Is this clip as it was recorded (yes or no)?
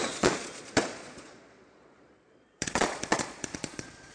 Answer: no